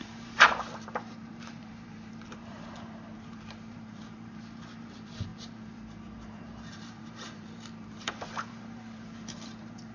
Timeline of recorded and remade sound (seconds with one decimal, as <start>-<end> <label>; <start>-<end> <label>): 0.0-9.9 remade